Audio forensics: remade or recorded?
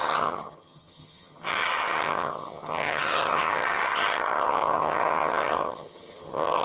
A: remade